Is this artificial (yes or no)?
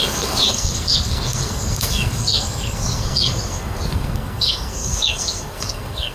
yes